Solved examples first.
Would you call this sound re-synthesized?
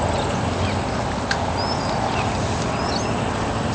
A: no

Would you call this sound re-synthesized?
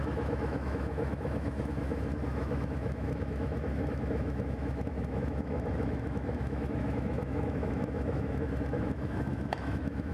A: yes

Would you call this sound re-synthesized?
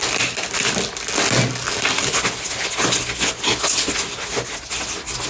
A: no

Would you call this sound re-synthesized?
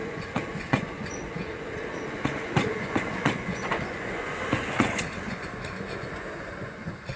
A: yes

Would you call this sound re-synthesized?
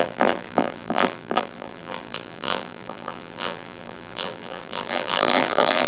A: yes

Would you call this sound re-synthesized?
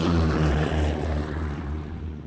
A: yes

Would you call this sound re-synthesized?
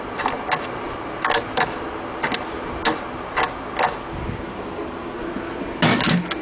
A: no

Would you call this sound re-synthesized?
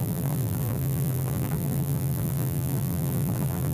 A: yes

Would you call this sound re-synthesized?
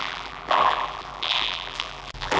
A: yes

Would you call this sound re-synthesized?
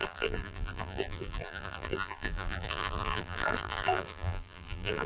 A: yes